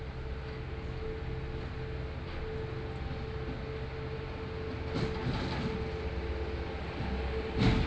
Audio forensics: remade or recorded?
recorded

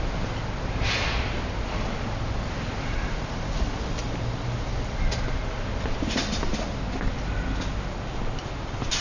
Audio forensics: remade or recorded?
recorded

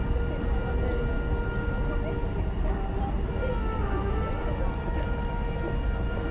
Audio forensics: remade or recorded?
recorded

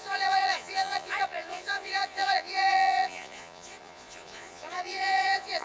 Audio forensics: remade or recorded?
remade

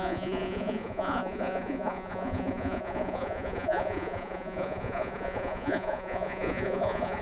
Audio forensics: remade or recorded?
remade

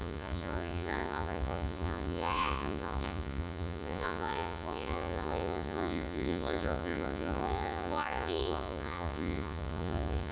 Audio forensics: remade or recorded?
remade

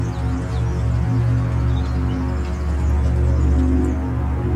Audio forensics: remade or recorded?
recorded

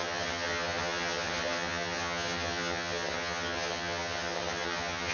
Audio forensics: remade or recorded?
remade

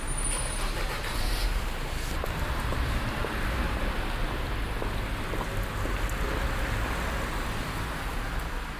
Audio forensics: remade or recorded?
recorded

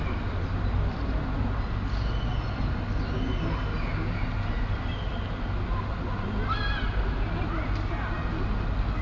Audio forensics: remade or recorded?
recorded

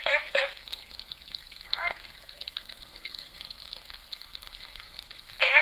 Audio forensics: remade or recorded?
remade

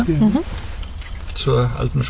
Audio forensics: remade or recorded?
recorded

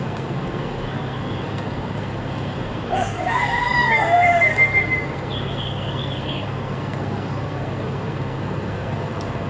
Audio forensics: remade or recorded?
remade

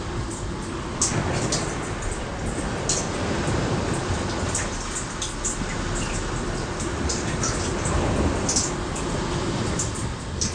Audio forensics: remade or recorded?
recorded